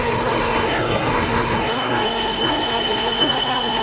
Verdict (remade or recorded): remade